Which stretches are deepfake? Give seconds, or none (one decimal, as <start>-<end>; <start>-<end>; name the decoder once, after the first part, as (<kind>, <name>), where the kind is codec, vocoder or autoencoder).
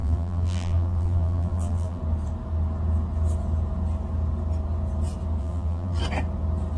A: 0.0-2.0 (vocoder, BigVGAN v2); 5.4-6.0